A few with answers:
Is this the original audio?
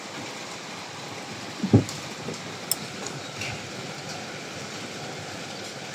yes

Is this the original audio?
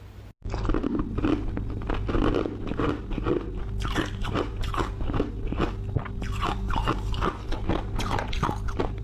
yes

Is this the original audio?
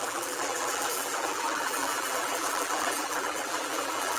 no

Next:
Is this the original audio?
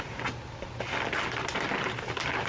yes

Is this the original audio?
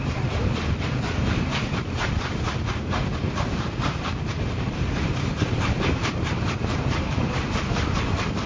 no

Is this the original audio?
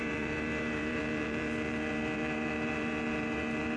no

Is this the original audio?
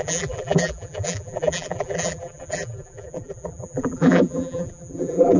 no